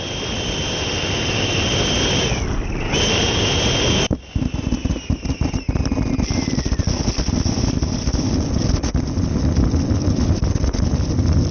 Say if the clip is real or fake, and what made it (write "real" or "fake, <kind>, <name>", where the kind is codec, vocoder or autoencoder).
real